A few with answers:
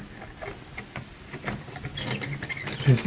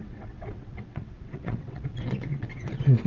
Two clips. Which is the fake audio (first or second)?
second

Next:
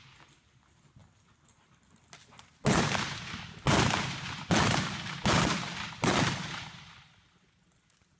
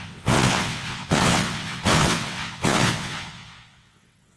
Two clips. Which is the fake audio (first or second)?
second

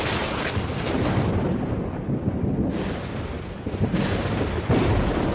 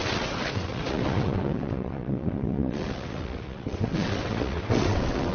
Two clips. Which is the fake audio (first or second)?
second